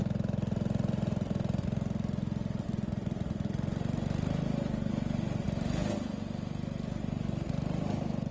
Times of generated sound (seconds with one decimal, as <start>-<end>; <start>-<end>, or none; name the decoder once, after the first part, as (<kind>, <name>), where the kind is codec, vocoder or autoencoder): none